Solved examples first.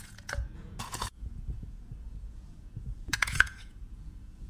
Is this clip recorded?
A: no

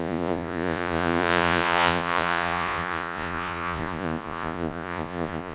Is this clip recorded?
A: no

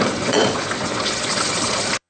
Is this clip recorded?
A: no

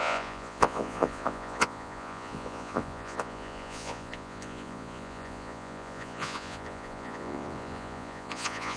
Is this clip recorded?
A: no